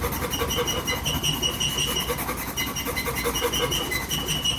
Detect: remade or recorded recorded